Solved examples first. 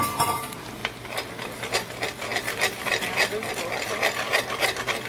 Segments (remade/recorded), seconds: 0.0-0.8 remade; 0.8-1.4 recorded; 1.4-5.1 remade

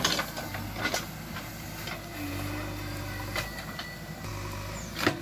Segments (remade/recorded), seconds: 0.0-5.2 recorded

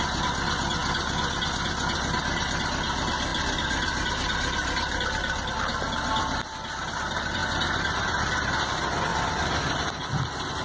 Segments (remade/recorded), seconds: 0.0-3.3 recorded; 3.3-5.5 remade; 5.5-10.6 recorded

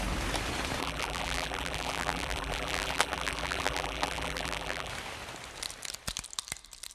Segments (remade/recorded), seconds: 0.0-0.8 recorded; 0.8-4.9 remade; 4.9-6.9 recorded

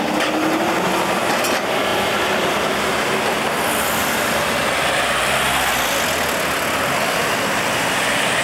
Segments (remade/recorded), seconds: 0.0-1.9 recorded; 1.9-2.6 remade; 2.6-4.0 recorded; 4.0-5.2 remade; 5.2-8.4 recorded

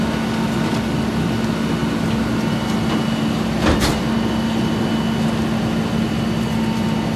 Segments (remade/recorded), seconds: 0.0-7.2 recorded